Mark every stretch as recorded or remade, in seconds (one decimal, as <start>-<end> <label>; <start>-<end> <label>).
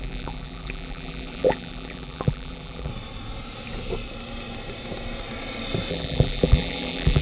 0.0-2.9 remade; 2.9-5.9 recorded; 5.9-7.2 remade